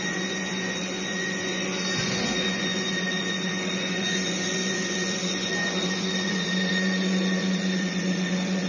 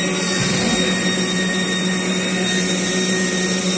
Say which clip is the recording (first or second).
second